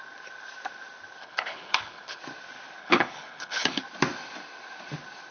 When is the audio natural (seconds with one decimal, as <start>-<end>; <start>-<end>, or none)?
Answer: 0.0-1.2; 2.2-2.8; 3.8-5.3